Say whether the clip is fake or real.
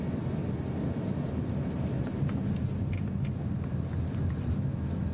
real